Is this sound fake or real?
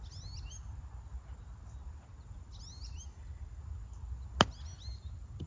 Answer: real